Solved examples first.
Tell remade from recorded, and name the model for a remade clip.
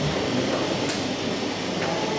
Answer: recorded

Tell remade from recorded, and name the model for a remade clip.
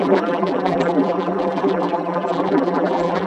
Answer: remade, vocoder, BigVGAN v2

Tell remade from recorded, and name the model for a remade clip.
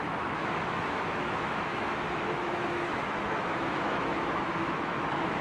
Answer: remade, autoencoder, DAC-VAE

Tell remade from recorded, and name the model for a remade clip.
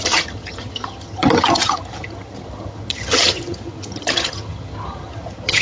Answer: remade, vocoder, HiFi-GAN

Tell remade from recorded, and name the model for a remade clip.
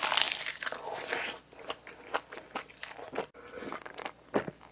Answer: recorded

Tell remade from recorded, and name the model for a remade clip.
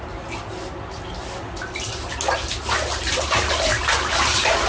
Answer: recorded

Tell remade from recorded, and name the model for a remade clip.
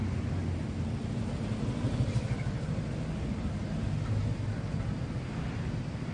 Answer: recorded